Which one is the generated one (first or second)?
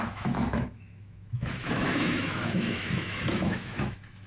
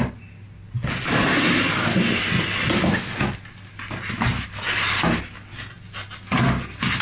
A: first